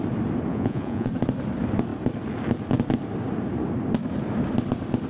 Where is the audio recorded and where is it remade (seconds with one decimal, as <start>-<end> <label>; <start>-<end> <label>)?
0.0-0.5 recorded; 0.5-1.1 remade; 1.1-5.1 recorded